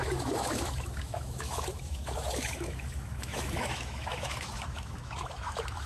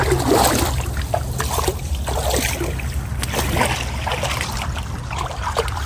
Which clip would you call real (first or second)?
second